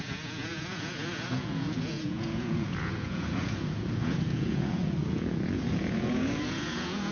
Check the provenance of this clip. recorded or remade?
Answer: remade